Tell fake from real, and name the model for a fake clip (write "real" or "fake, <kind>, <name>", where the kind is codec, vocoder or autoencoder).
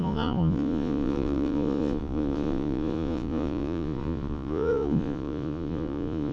fake, vocoder, Vocos